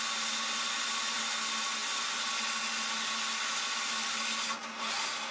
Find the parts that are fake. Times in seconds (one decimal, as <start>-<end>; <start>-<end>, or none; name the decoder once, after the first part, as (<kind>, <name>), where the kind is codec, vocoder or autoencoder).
none